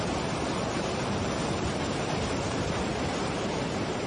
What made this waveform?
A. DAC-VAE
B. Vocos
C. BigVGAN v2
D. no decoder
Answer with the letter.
C